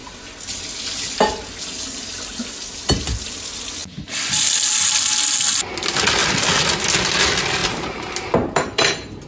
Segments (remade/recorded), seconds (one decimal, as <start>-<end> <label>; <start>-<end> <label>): 0.0-7.6 recorded; 7.6-8.8 remade; 8.8-9.3 recorded